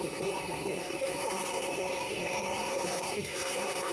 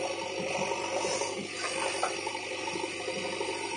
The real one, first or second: second